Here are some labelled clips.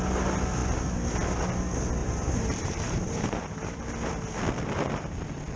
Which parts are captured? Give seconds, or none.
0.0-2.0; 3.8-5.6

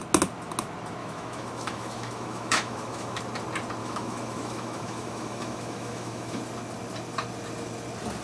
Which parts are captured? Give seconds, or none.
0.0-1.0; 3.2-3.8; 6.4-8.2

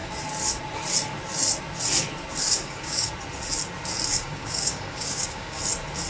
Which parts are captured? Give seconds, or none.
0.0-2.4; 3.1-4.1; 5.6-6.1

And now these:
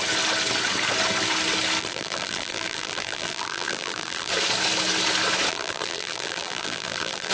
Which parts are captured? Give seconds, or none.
0.0-1.8; 4.3-5.5

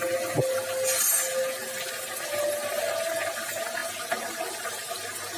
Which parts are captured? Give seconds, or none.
0.0-5.4